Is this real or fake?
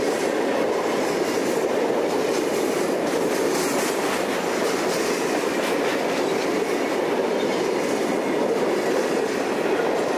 real